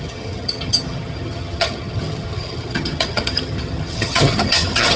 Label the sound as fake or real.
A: fake